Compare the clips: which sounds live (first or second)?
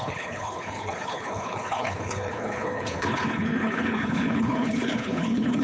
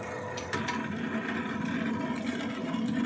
second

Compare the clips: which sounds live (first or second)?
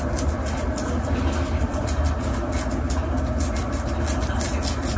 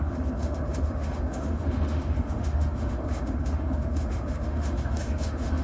first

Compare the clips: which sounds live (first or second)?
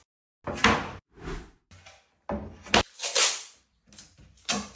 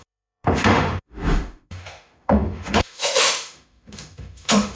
first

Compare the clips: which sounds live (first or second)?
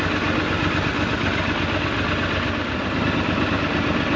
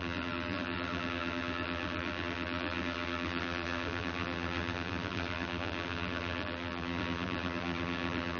first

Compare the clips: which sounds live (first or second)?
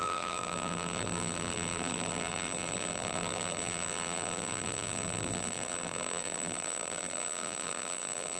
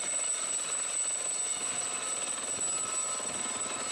second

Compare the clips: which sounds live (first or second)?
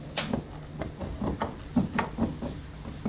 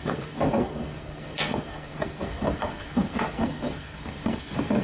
first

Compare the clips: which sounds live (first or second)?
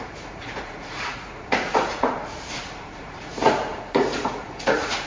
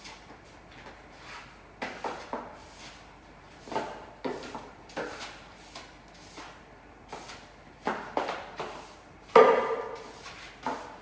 second